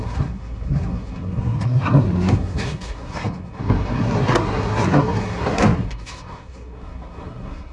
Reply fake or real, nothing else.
fake